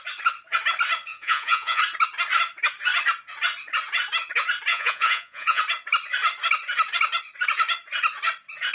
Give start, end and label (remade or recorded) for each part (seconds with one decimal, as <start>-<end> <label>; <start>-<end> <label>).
0.0-1.1 recorded; 1.1-1.8 remade; 1.8-4.7 recorded; 4.7-5.6 remade; 5.6-8.7 recorded